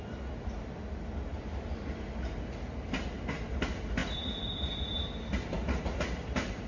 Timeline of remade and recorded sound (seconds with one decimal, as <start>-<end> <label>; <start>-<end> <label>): 0.0-6.7 recorded